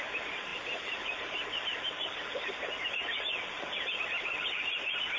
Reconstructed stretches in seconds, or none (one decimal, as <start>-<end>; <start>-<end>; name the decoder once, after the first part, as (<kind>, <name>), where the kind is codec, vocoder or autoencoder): none